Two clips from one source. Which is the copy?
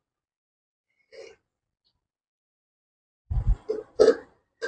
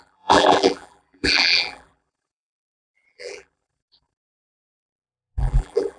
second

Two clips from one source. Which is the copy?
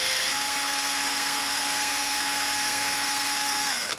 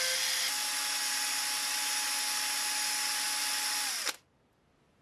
first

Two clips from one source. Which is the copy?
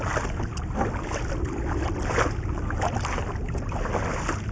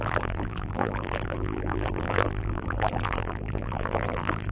second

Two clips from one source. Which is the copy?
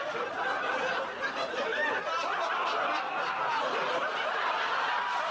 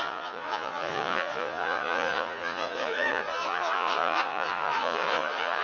second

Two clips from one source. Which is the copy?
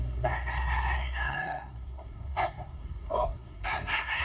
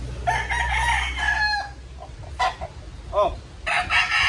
first